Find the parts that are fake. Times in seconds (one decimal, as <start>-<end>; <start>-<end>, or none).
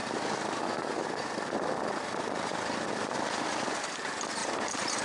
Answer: 0.0-0.6; 2.5-3.7; 4.4-5.0